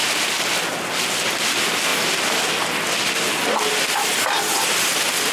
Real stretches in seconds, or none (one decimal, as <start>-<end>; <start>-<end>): 0.0-5.3